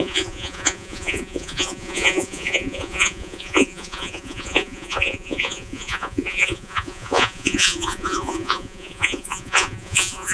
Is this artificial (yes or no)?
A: yes